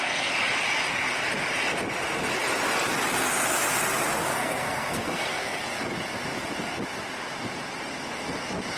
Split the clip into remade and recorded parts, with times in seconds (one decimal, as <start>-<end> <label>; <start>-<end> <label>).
0.0-4.2 recorded; 4.2-5.6 remade; 5.6-8.8 recorded